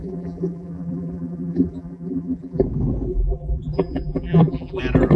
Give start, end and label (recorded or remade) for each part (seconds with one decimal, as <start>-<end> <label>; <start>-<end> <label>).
0.0-2.6 remade; 2.6-3.1 recorded; 3.1-4.8 remade; 4.8-5.2 recorded